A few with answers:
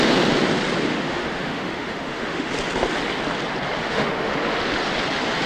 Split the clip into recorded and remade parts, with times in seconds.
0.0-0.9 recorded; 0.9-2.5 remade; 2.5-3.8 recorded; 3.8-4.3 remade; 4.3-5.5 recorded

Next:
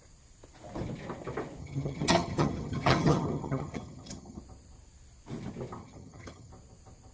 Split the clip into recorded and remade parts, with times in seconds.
0.0-1.6 recorded; 1.6-4.4 remade; 4.4-5.8 recorded; 5.8-6.5 remade; 6.5-7.1 recorded

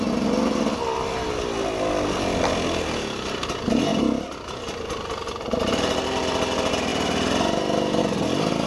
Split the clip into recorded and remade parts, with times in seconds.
0.0-6.9 recorded; 6.9-8.0 remade; 8.0-8.7 recorded

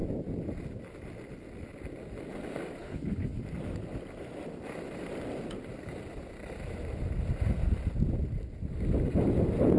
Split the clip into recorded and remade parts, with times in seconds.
0.0-2.8 recorded; 2.8-3.4 remade; 3.4-9.8 recorded

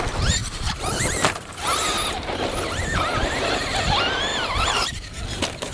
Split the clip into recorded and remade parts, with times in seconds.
0.0-0.4 recorded; 0.4-3.6 remade; 3.6-4.3 recorded; 4.3-5.2 remade; 5.2-5.7 recorded

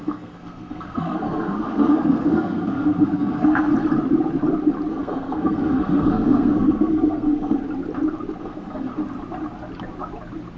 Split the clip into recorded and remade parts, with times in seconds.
0.0-3.7 remade; 3.7-4.9 recorded; 4.9-7.6 remade; 7.6-8.4 recorded; 8.4-8.9 remade; 8.9-10.6 recorded

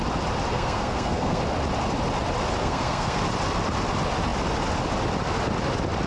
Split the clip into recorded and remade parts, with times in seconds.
0.0-0.5 recorded; 0.5-1.4 remade; 1.4-2.6 recorded; 2.6-3.2 remade; 3.2-6.1 recorded